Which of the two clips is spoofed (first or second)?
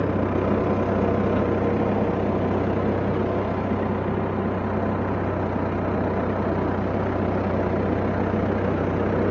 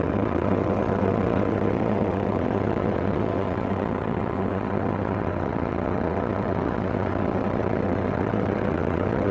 second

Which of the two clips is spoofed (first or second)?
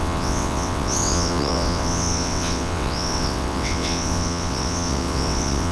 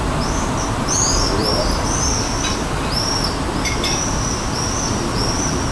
first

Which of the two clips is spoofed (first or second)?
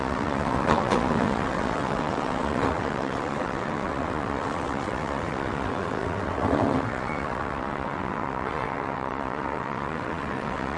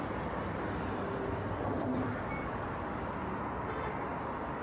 first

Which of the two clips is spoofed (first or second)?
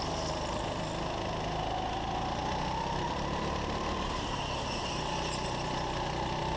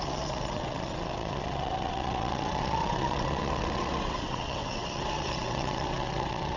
second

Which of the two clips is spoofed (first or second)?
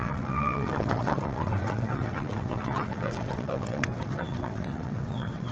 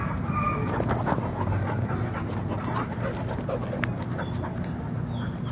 first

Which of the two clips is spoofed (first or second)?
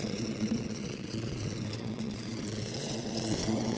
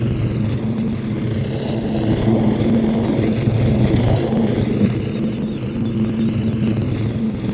first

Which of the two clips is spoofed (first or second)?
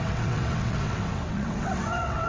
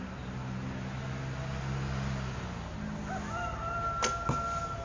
first